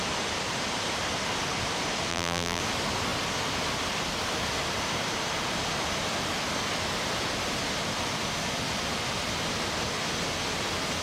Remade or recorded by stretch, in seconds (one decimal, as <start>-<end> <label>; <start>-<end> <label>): 0.0-2.1 recorded; 2.1-2.6 remade; 2.6-11.0 recorded